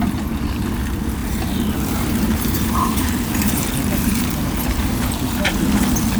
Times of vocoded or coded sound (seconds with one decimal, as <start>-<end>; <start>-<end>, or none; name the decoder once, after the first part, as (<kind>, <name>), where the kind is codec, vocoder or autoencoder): 1.2-4.9 (vocoder, BigVGAN v2)

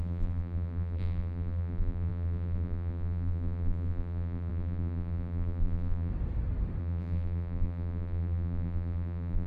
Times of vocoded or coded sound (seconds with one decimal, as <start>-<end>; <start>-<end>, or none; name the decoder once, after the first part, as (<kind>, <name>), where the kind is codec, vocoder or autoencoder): 0.0-6.1 (vocoder, BigVGAN v2); 6.8-9.5